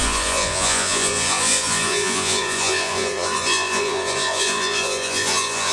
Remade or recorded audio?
remade